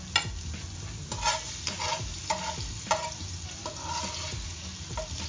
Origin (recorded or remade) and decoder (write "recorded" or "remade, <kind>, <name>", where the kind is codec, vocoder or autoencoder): recorded